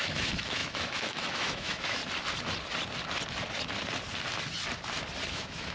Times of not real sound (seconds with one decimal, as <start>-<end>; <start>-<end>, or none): 0.0-2.0; 5.3-5.7